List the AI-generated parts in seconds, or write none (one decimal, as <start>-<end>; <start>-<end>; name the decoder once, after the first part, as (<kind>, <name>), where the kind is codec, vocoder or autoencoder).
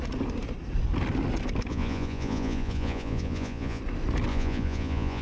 1.7-3.8 (vocoder, Vocos); 4.3-5.2